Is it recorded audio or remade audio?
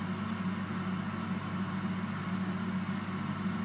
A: recorded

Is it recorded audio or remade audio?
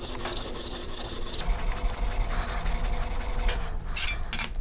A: recorded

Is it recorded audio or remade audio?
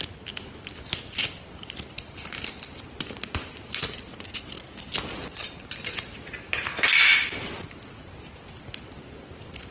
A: recorded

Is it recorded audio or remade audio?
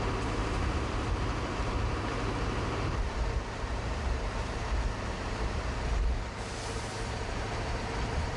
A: remade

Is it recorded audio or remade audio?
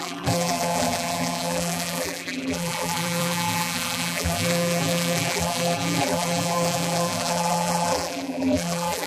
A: remade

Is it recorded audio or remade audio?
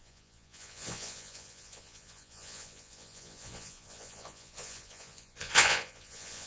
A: remade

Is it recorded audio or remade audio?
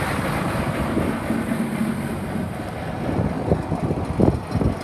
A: recorded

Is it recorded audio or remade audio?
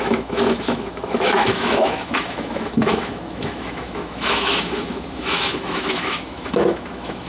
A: remade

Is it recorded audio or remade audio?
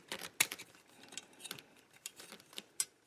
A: recorded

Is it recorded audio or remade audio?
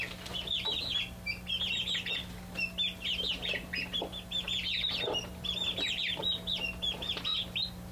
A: recorded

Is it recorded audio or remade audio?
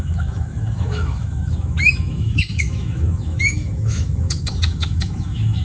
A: remade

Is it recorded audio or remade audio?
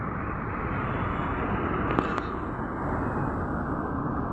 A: recorded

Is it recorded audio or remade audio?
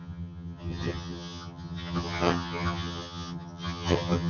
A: remade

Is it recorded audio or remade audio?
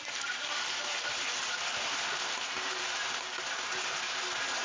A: remade